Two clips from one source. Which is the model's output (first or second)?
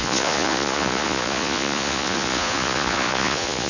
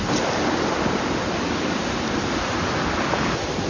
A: first